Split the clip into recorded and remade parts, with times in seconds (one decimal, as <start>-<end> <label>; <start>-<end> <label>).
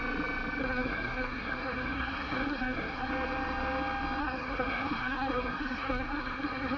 0.0-0.6 recorded; 0.6-3.1 remade; 3.1-4.2 recorded; 4.2-6.8 remade